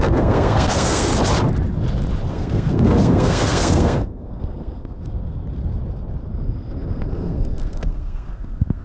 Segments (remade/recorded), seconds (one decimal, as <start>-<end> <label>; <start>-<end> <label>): 0.0-1.1 remade; 1.1-2.3 recorded; 2.3-5.4 remade; 5.4-6.3 recorded; 6.3-8.8 remade